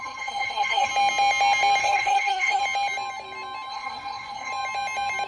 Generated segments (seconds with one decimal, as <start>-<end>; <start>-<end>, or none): 0.0-0.9; 1.8-2.6; 3.7-4.5